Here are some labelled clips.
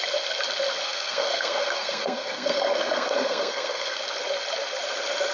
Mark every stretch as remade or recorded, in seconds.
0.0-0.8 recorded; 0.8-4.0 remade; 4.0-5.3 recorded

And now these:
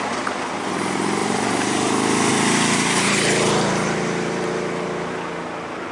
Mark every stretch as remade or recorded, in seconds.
0.0-1.2 recorded; 1.2-1.9 remade; 1.9-2.3 recorded; 2.3-5.1 remade; 5.1-5.9 recorded

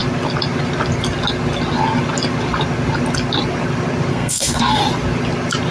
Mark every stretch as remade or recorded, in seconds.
0.0-4.1 recorded; 4.1-4.8 remade; 4.8-5.7 recorded